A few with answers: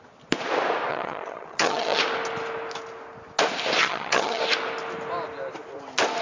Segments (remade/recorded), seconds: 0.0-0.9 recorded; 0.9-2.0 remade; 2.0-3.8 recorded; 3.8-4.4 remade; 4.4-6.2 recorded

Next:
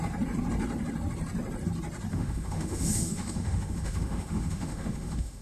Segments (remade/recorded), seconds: 0.0-2.1 recorded; 2.1-5.4 remade

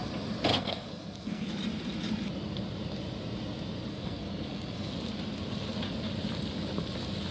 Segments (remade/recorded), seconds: 0.0-0.5 recorded; 0.5-1.5 remade; 1.5-3.9 recorded; 3.9-4.9 remade; 4.9-7.3 recorded

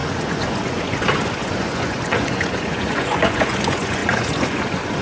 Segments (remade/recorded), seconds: 0.0-5.0 remade

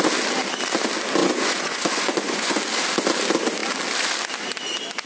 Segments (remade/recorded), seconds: 0.0-1.2 recorded; 1.2-2.6 remade; 2.6-5.1 recorded

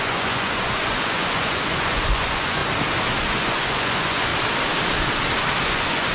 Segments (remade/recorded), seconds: 0.0-2.6 remade; 2.6-3.2 recorded; 3.2-4.3 remade; 4.3-5.6 recorded; 5.6-6.1 remade

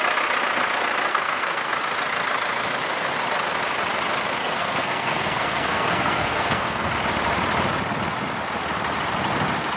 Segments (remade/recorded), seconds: 0.0-1.1 recorded; 1.1-1.7 remade; 1.7-4.4 recorded; 4.4-6.9 remade; 6.9-9.8 recorded